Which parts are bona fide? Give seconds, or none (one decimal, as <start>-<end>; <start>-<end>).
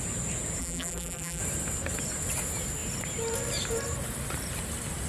0.0-0.6; 1.4-5.1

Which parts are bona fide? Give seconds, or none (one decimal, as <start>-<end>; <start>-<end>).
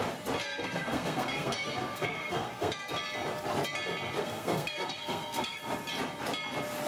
0.0-0.4; 2.9-4.2; 5.6-6.9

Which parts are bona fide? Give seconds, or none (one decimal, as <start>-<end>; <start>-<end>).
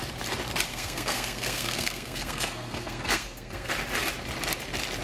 0.0-0.7; 3.7-5.0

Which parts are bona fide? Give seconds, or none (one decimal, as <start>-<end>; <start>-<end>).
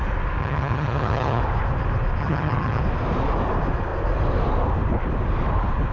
0.0-0.4; 1.4-2.2; 2.8-5.9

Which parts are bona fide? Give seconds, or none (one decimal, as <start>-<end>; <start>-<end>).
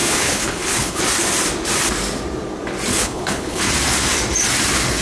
1.0-2.9; 3.7-5.0